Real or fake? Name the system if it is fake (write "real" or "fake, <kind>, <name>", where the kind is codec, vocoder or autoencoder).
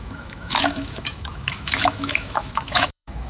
fake, autoencoder, DAC-VAE